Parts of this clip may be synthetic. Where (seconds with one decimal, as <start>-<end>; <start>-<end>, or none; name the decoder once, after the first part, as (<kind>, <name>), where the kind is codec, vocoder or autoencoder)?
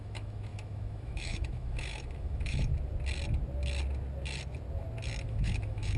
0.0-2.7 (autoencoder, DAC-VAE); 5.2-6.0